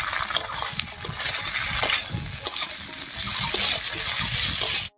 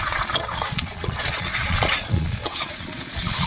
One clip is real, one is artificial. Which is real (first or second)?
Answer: first